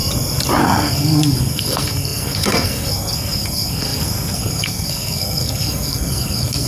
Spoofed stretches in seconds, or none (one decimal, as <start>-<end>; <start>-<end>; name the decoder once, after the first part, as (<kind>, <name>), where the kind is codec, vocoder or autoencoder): 0.6-6.7 (codec, SNAC)